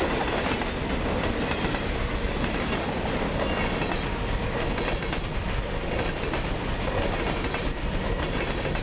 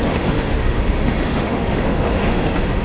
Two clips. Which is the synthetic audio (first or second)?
second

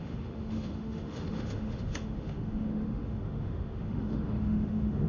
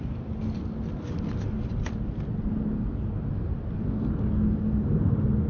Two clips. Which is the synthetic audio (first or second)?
first